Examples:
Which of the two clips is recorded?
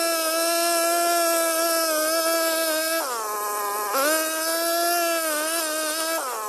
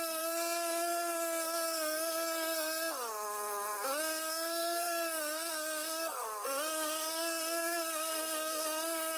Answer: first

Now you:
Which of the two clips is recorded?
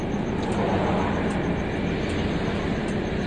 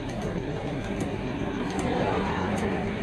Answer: first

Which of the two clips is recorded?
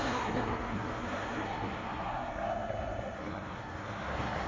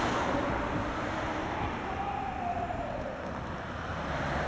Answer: second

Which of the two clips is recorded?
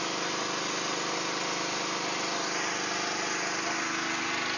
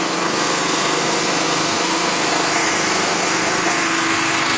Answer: first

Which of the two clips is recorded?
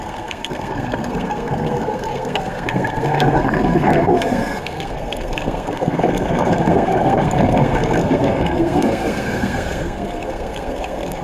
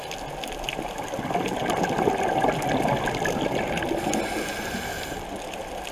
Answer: second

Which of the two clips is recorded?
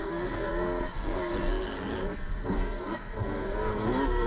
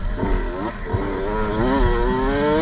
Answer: second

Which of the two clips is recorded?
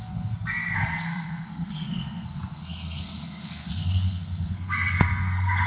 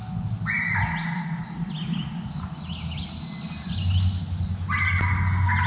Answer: second